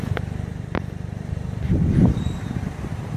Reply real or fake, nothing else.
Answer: fake